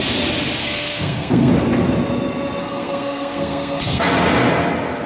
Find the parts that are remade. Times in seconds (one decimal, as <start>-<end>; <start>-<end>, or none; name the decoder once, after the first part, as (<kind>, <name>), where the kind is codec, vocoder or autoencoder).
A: 0.6-1.5 (codec, SNAC); 2.6-4.0

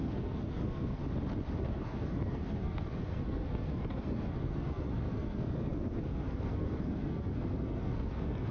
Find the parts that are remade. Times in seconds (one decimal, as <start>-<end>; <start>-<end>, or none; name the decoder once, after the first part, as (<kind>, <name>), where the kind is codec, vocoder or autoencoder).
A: 0.0-1.0 (codec, SNAC); 1.7-8.5

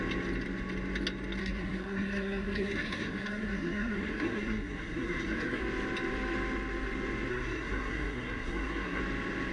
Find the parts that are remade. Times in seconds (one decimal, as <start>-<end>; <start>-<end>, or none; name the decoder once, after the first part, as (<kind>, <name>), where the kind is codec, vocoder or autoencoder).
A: 1.4-5.6 (codec, SNAC); 7.3-9.0

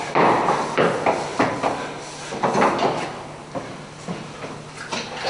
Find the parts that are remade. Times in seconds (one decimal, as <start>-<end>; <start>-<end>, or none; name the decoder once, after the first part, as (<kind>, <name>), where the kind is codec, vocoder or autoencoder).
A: none

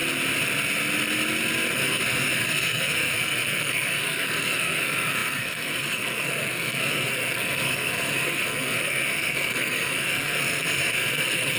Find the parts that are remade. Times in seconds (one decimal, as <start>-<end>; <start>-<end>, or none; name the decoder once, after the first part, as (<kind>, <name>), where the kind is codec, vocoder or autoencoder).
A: 1.7-11.6 (codec, SNAC)

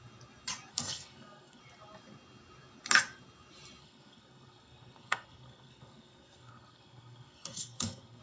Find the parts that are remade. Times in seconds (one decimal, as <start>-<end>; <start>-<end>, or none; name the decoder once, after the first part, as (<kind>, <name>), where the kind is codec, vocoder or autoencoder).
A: 0.7-1.6 (codec, SNAC); 3.8-8.2

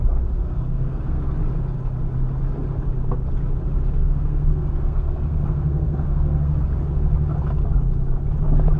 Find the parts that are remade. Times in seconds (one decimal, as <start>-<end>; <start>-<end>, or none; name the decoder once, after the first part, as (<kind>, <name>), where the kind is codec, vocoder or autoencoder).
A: 0.4-1.2 (codec, SNAC); 4.0-6.6